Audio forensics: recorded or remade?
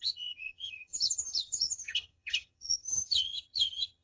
remade